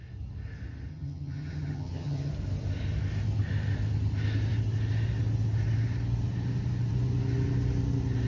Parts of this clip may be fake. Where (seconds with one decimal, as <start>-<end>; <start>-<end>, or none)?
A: 0.9-2.3